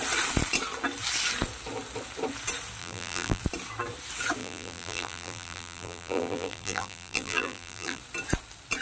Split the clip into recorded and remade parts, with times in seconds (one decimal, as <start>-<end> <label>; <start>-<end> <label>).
0.0-2.8 recorded; 2.8-3.4 remade; 3.4-4.4 recorded; 4.4-8.0 remade; 8.0-8.8 recorded